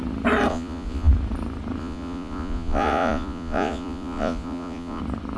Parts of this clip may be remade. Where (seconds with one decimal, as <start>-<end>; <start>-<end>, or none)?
0.5-1.1; 1.8-5.0